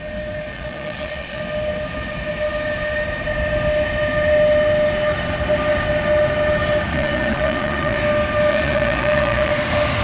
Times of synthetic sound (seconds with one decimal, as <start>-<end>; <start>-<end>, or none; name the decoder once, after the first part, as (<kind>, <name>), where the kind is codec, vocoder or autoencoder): 0.5-1.4 (vocoder, Vocos); 6.9-8.0; 8.5-9.5